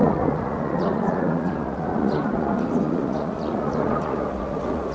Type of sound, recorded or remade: remade